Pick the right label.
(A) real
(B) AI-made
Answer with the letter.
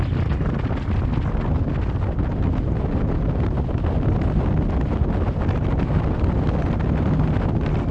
A